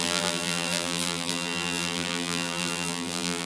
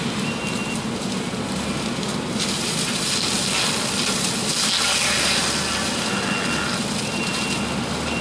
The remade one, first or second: first